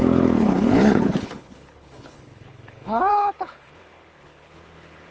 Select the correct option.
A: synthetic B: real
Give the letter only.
A